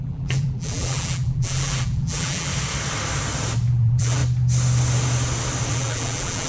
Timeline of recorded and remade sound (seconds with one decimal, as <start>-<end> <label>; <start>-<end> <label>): 0.0-2.5 remade; 2.5-3.7 recorded; 3.7-4.2 remade; 4.2-5.7 recorded; 5.7-6.5 remade